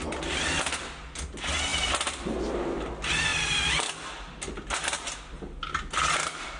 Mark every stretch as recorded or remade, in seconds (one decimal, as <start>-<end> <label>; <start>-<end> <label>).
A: 0.0-6.6 recorded